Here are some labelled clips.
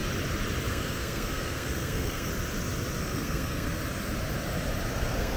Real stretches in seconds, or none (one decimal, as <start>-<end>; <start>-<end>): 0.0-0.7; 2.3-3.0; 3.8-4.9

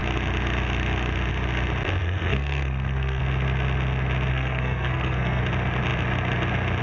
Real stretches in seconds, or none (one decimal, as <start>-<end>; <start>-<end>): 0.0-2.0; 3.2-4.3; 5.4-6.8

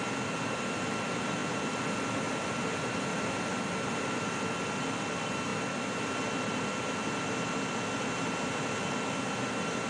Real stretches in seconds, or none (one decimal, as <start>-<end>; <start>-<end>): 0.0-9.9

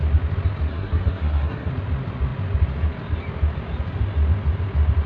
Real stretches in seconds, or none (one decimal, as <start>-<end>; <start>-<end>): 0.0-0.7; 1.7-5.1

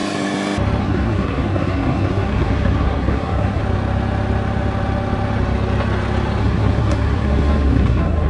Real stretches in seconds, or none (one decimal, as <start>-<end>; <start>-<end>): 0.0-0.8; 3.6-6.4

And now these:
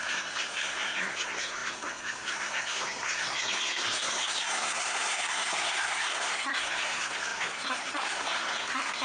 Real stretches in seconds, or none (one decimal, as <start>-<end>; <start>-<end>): none

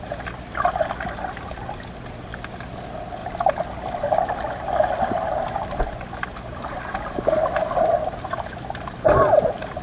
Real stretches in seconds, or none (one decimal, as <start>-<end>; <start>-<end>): 0.0-9.8